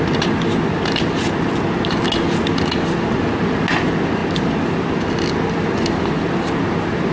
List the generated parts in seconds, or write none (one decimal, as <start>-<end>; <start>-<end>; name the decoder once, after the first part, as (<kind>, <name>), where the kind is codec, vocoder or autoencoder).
none